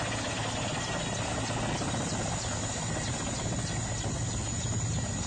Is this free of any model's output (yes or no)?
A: yes